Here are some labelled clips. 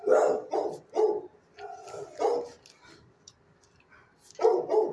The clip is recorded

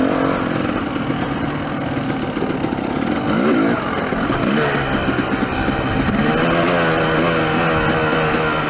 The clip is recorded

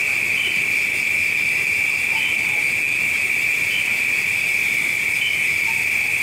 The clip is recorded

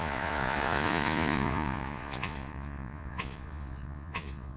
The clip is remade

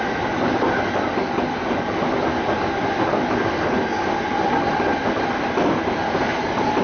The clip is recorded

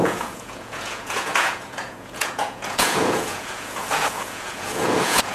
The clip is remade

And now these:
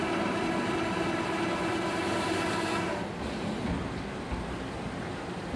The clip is recorded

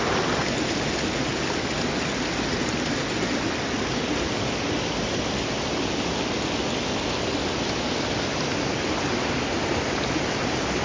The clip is recorded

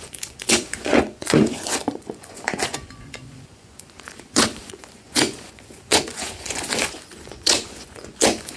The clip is remade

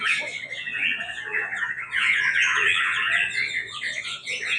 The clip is remade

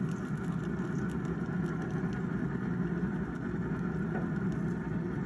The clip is recorded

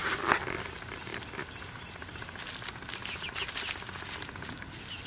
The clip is recorded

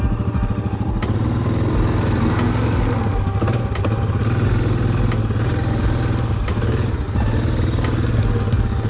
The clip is recorded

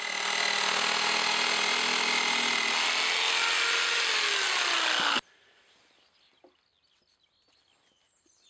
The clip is recorded